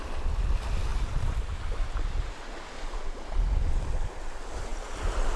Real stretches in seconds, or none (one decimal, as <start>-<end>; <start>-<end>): 0.0-5.4